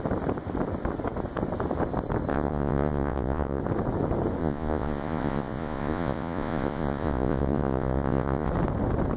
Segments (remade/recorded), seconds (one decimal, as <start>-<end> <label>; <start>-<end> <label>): 0.0-2.3 recorded; 2.3-3.6 remade; 3.6-4.4 recorded; 4.4-8.5 remade; 8.5-9.2 recorded